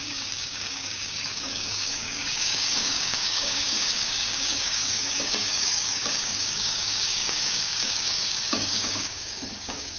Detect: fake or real fake